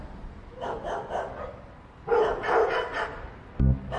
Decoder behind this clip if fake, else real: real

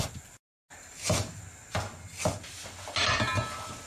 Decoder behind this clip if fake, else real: real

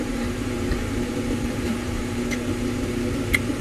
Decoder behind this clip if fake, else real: fake, vocoder, BigVGAN v2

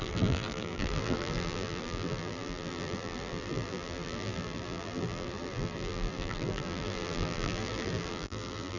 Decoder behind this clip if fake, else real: fake, vocoder, BigVGAN v2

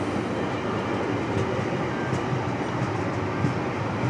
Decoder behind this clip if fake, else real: real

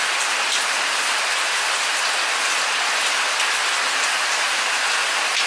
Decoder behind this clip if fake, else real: real